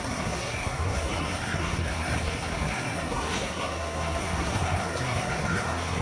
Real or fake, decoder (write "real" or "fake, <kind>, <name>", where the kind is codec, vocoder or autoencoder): fake, codec, SNAC